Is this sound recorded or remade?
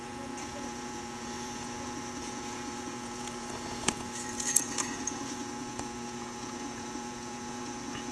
remade